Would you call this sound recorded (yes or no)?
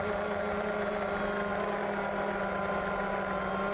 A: yes